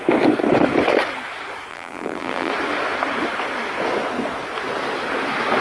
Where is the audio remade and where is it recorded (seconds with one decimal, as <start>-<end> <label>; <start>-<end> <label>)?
0.0-1.7 recorded; 1.7-2.5 remade; 2.5-5.6 recorded